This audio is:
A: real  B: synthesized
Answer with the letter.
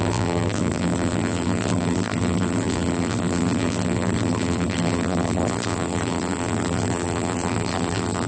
B